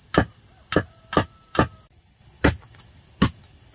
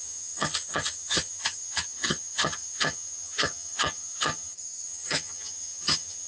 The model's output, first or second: second